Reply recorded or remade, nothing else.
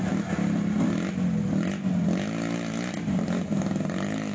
recorded